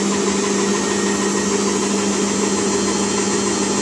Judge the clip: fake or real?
real